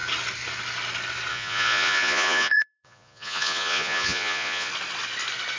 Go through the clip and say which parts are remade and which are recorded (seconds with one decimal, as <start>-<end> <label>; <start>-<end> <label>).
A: 0.0-1.3 recorded; 1.3-4.7 remade; 4.7-5.6 recorded